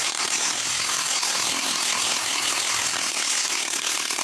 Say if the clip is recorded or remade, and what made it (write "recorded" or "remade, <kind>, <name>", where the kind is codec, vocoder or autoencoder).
remade, codec, SNAC